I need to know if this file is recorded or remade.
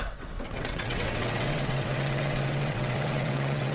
remade